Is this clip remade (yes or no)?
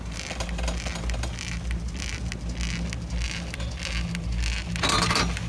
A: no